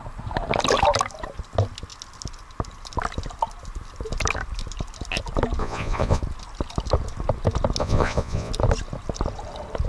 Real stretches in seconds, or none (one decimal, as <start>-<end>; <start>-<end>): 0.0-5.6; 6.2-7.8; 8.5-9.9